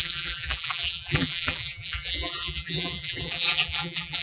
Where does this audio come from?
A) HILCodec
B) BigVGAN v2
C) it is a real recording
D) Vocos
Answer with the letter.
B